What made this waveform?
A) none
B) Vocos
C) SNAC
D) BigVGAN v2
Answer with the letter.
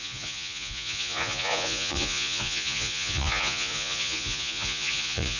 B